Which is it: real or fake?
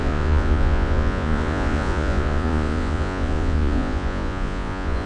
fake